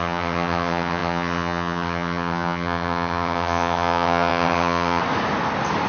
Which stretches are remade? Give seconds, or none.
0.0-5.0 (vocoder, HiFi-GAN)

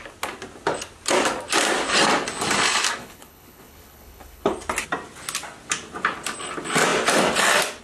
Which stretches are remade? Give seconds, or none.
3.0-4.5 (codec, HILCodec)

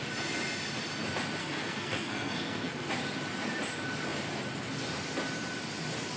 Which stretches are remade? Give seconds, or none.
1.4-2.9 (codec, SNAC)

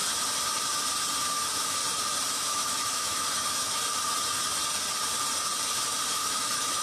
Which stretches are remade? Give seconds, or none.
1.2-1.8 (autoencoder, DAC-VAE); 2.3-3.8; 6.1-6.8

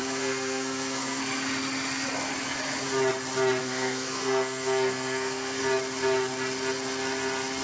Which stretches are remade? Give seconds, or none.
0.0-1.2 (codec, SNAC); 3.6-5.6

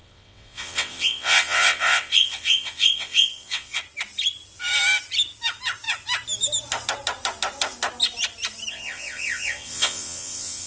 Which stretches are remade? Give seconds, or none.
0.0-3.8 (vocoder, WaveNeXt); 8.7-10.7

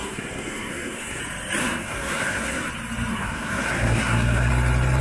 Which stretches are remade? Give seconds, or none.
0.0-1.2 (codec, SNAC); 1.6-2.7; 3.1-4.5